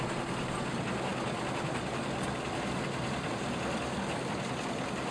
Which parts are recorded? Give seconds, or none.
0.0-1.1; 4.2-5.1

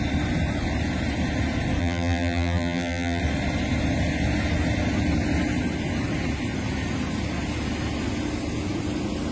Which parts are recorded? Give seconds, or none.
0.0-1.8; 3.2-9.3

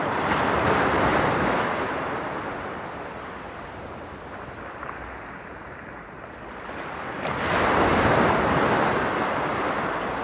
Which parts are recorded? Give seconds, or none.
0.0-1.1; 3.7-7.9; 8.9-10.2

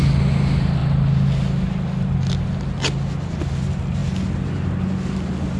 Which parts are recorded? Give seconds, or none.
0.0-5.6

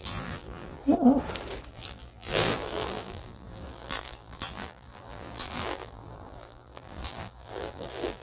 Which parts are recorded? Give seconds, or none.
0.8-1.7